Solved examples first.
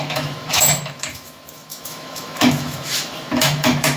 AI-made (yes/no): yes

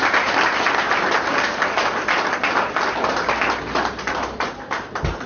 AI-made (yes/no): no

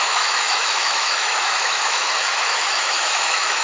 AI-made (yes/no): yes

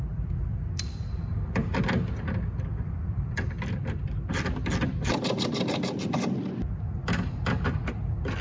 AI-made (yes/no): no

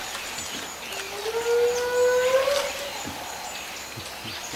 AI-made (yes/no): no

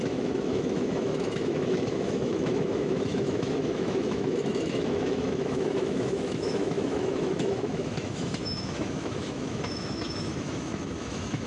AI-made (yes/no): yes